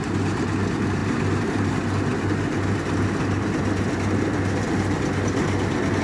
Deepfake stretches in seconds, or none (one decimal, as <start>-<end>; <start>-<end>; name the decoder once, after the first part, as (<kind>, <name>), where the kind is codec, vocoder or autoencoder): none